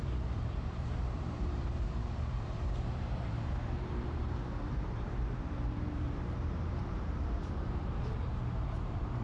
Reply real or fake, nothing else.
fake